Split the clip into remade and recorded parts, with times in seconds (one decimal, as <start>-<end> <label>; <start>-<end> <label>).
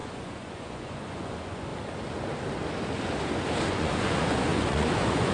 0.0-1.7 remade; 1.7-3.7 recorded; 3.7-5.3 remade